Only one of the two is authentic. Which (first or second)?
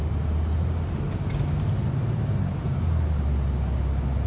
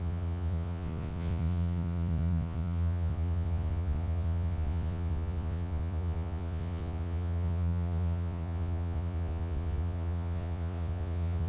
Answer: first